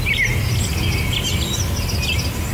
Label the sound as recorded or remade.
recorded